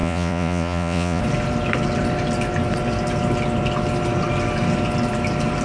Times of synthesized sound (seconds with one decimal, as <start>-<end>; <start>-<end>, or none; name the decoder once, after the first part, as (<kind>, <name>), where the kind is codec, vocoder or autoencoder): 0.0-1.2 (vocoder, Vocos)

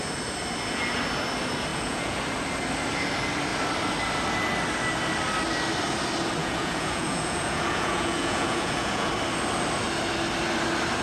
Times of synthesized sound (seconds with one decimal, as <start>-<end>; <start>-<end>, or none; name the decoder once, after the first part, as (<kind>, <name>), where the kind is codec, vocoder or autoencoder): 1.7-2.2 (vocoder, Vocos); 6.4-9.1

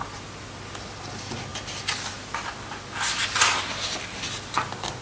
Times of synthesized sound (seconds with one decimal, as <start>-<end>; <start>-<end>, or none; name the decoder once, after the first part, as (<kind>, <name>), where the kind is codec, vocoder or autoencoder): none

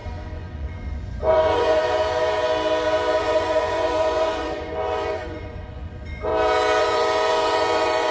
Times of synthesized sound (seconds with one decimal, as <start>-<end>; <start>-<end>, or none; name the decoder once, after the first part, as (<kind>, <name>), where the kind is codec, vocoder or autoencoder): 0.0-1.8 (vocoder, Vocos); 3.2-6.3; 6.8-8.1

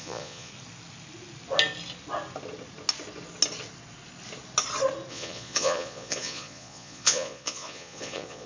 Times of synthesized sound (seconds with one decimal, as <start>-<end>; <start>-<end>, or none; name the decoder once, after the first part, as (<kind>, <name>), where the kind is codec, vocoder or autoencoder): 0.0-0.5 (vocoder, Vocos); 5.1-8.5